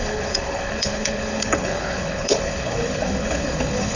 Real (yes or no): no